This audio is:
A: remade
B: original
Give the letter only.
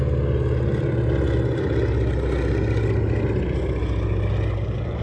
B